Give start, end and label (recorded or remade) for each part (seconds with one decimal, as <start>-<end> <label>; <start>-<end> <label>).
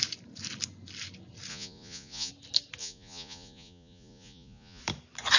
0.0-1.5 recorded; 1.5-2.3 remade; 2.3-2.8 recorded; 2.8-4.8 remade; 4.8-5.4 recorded